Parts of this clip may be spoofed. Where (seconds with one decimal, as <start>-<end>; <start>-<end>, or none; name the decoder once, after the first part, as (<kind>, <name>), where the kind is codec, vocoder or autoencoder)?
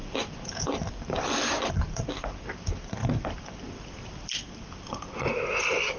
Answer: 0.0-1.7 (vocoder, BigVGAN v2); 3.0-5.0